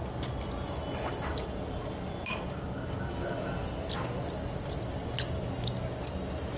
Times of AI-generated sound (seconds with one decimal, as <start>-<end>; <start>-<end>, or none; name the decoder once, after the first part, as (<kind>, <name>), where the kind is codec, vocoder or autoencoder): none